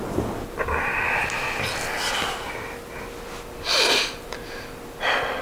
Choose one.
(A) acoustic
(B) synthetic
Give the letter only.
A